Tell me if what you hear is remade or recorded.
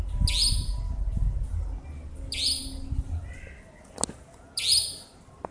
recorded